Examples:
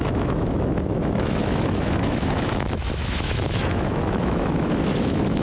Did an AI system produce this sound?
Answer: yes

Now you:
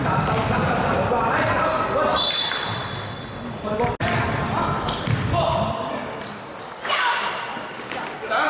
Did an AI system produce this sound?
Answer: no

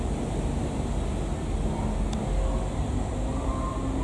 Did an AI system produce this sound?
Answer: no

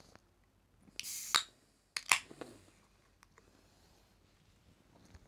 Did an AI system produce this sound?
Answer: no